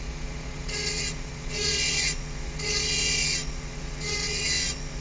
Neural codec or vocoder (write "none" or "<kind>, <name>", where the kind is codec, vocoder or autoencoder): vocoder, Vocos